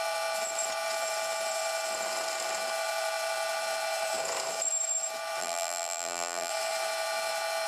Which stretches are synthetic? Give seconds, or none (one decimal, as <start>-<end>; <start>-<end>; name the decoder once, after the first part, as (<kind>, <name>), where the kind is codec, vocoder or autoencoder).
5.4-6.5 (vocoder, BigVGAN v2)